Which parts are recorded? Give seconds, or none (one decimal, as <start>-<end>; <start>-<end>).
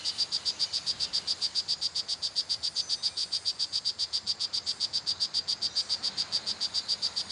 0.0-3.2; 3.8-7.3